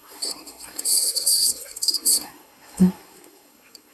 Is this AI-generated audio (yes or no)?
yes